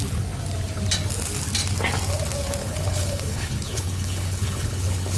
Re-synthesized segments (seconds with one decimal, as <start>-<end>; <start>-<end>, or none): 2.6-5.2